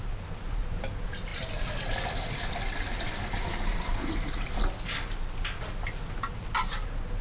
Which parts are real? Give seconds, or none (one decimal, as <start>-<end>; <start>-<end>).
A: 0.0-7.2